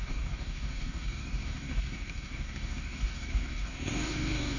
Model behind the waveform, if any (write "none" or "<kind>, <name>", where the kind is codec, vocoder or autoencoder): codec, DAC